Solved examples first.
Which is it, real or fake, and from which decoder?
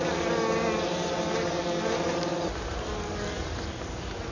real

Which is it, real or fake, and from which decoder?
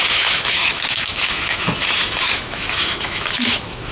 fake, autoencoder, DAC-VAE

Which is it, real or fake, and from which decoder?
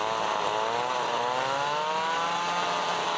real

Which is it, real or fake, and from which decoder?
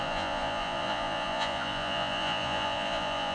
fake, vocoder, Vocos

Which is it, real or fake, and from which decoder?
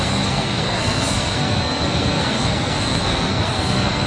fake, codec, SNAC